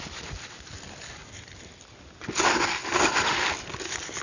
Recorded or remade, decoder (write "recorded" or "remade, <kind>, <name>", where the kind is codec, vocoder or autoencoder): recorded